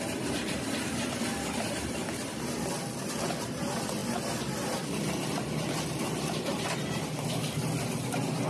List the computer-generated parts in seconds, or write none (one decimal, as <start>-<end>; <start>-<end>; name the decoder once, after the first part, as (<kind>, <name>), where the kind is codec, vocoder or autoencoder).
0.0-4.0 (vocoder, BigVGAN v2); 5.7-8.5